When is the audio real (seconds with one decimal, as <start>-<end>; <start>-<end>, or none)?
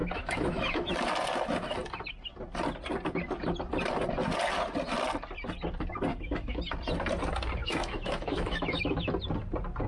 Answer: 0.9-6.1; 6.6-7.6; 9.1-9.9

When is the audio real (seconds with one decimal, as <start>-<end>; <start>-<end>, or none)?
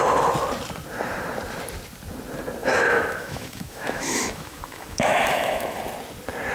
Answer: 0.0-2.6; 5.8-6.5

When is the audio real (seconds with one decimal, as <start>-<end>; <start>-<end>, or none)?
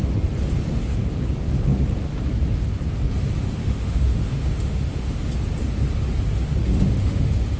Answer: 0.0-3.6; 5.3-6.6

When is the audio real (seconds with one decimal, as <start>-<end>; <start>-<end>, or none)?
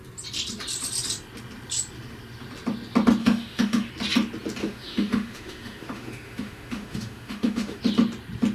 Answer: 0.0-3.2; 3.9-4.6; 7.8-8.5